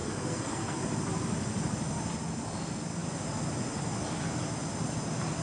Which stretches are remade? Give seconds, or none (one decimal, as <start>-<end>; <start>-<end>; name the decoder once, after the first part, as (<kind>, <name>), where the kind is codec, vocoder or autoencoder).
0.0-0.8 (codec, SNAC)